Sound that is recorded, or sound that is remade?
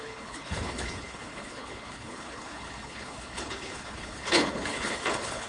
remade